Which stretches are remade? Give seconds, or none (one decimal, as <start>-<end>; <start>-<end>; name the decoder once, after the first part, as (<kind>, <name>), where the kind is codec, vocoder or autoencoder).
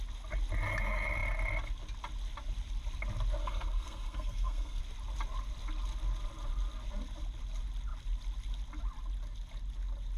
3.4-4.8 (codec, SNAC)